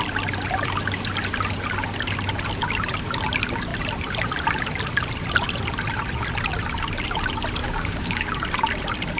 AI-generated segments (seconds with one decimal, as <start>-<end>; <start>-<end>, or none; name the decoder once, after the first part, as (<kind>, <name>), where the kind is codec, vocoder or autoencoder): 7.6-8.3 (codec, DAC)